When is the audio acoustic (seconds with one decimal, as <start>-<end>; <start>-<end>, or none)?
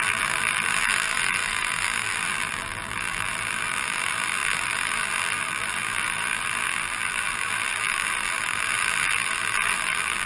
none